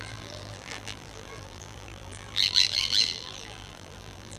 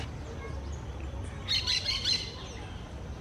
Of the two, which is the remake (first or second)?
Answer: first